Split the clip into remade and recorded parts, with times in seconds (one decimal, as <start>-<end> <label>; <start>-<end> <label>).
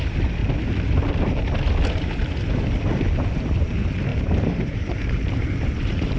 0.0-0.4 remade; 0.4-3.4 recorded; 3.4-6.2 remade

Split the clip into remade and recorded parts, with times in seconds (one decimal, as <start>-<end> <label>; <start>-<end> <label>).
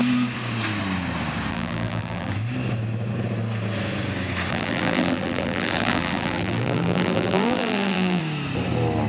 0.0-1.5 recorded; 1.5-2.3 remade; 2.3-4.5 recorded; 4.5-8.2 remade; 8.2-9.1 recorded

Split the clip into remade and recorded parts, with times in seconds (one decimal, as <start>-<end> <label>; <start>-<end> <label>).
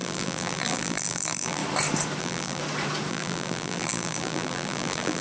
0.0-1.6 remade; 1.6-2.2 recorded; 2.2-2.6 remade; 2.6-3.1 recorded; 3.1-5.2 remade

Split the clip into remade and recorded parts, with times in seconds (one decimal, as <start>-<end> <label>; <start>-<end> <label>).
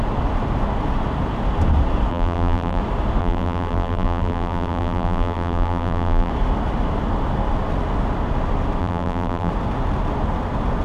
0.0-2.1 recorded; 2.1-2.8 remade; 2.8-3.2 recorded; 3.2-6.3 remade; 6.3-8.8 recorded; 8.8-9.5 remade; 9.5-10.8 recorded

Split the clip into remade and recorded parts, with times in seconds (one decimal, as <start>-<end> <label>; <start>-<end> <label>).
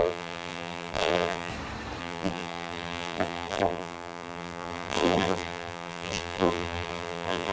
0.0-1.5 remade; 1.5-2.0 recorded; 2.0-7.5 remade